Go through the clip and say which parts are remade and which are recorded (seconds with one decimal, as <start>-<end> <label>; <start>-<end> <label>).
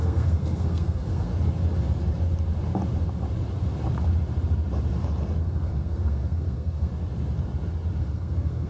0.0-1.3 remade; 1.3-5.4 recorded; 5.4-6.9 remade; 6.9-8.0 recorded; 8.0-8.7 remade